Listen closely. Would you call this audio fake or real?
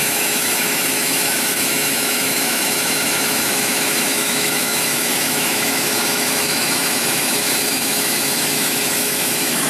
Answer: fake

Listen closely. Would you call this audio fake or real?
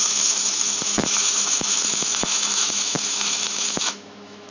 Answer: fake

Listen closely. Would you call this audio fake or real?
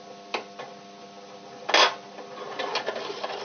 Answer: real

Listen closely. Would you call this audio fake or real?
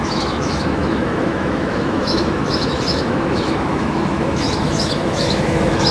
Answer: fake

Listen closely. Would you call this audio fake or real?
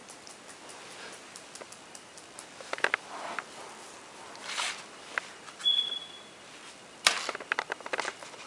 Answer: real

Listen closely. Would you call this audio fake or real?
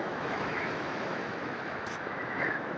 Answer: fake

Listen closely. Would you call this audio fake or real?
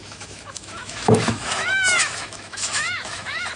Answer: fake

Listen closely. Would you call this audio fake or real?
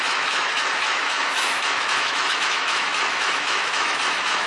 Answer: fake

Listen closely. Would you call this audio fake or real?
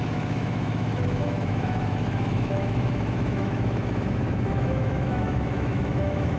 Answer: fake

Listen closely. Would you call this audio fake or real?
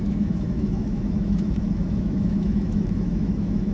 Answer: fake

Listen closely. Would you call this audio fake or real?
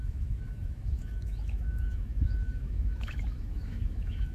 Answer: fake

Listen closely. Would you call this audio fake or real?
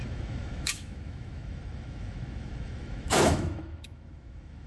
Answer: fake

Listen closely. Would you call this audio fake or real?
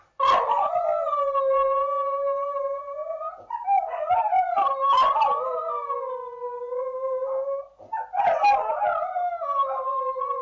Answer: real